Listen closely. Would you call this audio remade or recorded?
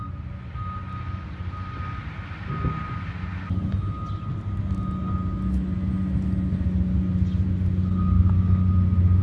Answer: recorded